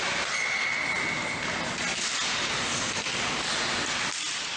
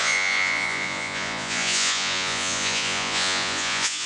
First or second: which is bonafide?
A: first